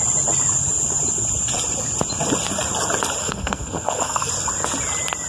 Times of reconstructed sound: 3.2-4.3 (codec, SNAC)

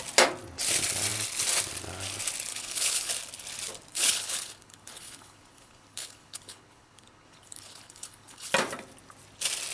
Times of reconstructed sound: 2.5-3.1 (codec, HILCodec); 3.9-8.5

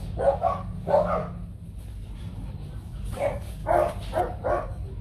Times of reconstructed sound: 0.0-1.2 (codec, DAC); 2.5-3.6; 4.2-5.0

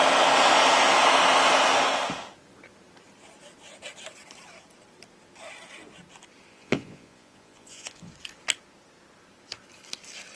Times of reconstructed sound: 6.5-8.1 (vocoder, Vocos)

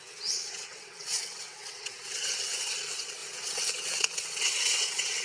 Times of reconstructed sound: 0.0-5.2 (vocoder, WaveNeXt)

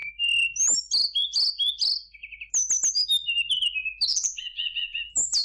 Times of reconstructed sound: 4.1-5.0 (vocoder, BigVGAN v2)